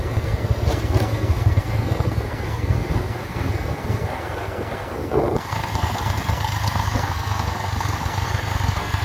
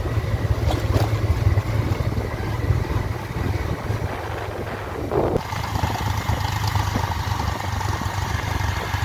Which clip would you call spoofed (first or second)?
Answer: first